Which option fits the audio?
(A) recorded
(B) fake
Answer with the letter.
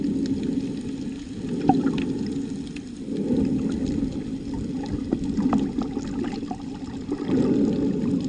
A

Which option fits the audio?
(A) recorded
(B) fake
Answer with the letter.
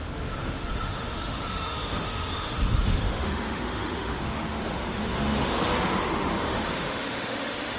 B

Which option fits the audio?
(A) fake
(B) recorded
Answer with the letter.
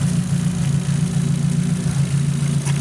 B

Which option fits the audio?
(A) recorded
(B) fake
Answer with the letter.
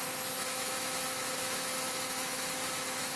B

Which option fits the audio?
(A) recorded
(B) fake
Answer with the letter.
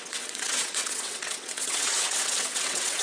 B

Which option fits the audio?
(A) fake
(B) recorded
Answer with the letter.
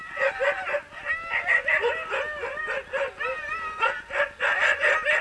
B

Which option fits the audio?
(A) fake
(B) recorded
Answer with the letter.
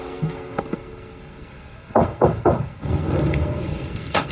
A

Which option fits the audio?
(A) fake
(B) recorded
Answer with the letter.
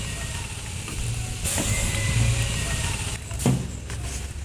B